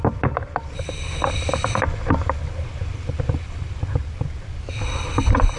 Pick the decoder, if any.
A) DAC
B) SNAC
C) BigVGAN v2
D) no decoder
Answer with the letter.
D